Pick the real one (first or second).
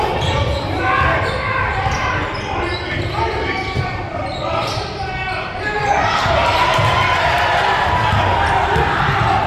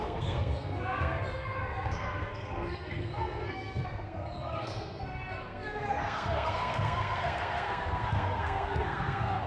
first